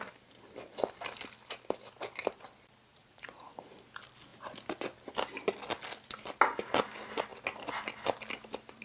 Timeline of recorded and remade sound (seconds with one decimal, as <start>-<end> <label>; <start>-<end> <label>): 0.0-2.9 recorded; 2.9-3.8 remade; 3.8-8.8 recorded